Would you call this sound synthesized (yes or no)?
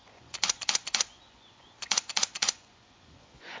yes